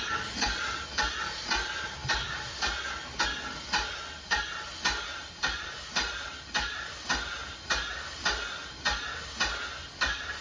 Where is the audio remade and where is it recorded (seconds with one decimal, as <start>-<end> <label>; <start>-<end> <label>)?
0.0-10.4 recorded